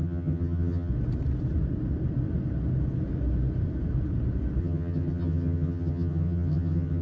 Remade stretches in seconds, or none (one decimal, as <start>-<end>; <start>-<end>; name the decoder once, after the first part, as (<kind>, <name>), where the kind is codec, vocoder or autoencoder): 0.0-0.9 (vocoder, HiFi-GAN); 4.6-7.0